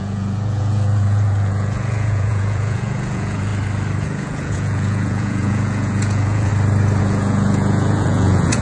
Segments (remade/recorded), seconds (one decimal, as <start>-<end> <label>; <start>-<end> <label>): 0.0-3.5 remade; 3.5-4.0 recorded; 4.0-6.5 remade; 6.5-7.0 recorded; 7.0-8.6 remade